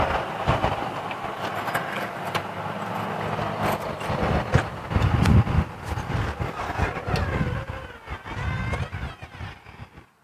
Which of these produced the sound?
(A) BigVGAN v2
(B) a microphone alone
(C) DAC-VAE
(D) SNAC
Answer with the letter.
B